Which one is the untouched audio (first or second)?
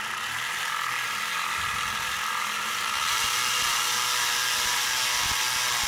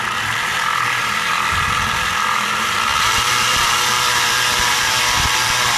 first